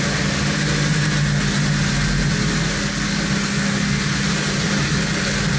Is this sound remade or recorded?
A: recorded